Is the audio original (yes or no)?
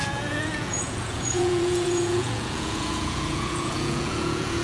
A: no